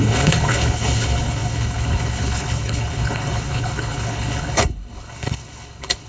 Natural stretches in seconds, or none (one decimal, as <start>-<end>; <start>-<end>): none